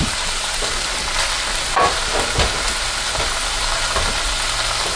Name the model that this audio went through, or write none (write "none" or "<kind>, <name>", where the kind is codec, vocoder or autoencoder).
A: none